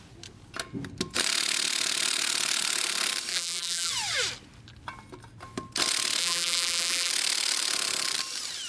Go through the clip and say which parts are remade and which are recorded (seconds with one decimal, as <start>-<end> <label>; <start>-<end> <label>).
0.0-3.3 recorded; 3.3-3.9 remade; 3.9-6.2 recorded; 6.2-7.1 remade; 7.1-8.7 recorded